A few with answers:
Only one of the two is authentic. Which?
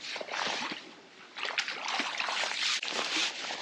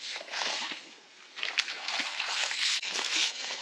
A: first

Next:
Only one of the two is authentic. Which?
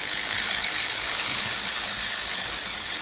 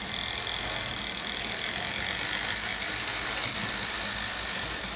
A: second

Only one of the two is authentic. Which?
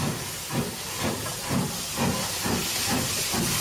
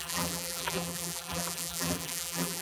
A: first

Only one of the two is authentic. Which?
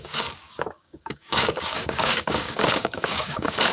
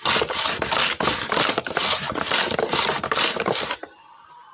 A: second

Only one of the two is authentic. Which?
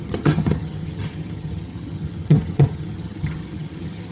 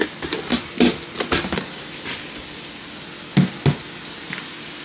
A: second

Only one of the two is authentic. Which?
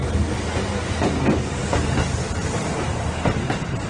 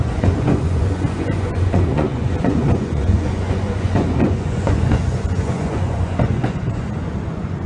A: first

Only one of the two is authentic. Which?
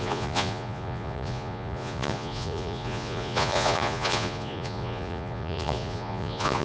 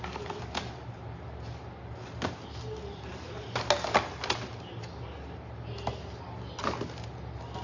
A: second